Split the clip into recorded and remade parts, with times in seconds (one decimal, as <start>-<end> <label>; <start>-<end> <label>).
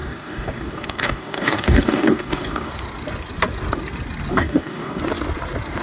0.0-2.7 remade; 2.7-4.3 recorded; 4.3-5.0 remade; 5.0-5.8 recorded